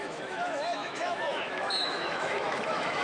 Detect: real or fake fake